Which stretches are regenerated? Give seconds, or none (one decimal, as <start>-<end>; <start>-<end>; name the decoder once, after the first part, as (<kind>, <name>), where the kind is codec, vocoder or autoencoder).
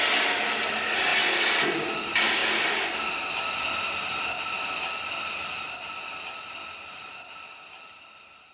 2.4-5.7 (vocoder, BigVGAN v2)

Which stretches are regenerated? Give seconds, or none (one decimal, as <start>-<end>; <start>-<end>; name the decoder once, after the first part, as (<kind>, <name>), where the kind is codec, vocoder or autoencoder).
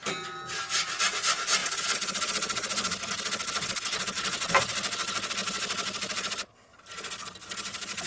none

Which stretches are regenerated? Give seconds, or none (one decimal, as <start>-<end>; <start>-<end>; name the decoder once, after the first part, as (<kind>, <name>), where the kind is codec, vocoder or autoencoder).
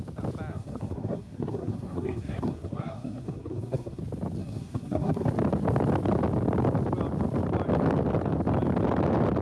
0.5-4.0 (codec, SNAC); 4.4-5.3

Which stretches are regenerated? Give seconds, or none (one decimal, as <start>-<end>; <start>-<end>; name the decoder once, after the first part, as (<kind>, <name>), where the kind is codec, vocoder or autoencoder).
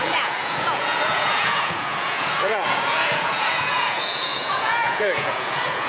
0.0-5.9 (vocoder, Vocos)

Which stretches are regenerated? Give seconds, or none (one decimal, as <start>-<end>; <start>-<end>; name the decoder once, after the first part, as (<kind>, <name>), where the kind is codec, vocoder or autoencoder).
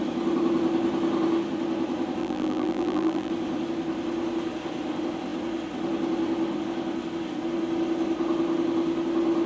2.2-3.3 (vocoder, BigVGAN v2)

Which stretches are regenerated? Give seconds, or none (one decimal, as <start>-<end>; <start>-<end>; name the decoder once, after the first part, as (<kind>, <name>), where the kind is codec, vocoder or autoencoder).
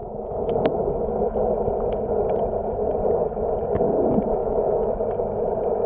0.0-0.8 (autoencoder, DAC-VAE); 4.4-5.0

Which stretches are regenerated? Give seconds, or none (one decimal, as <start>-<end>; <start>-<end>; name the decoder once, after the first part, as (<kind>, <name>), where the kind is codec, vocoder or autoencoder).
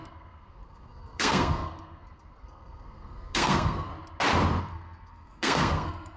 0.0-3.9 (codec, SNAC); 4.6-6.2